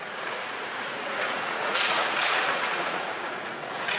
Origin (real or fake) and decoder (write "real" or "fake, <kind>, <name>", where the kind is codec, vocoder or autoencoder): fake, vocoder, Vocos